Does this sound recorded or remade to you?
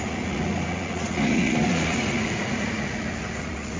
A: remade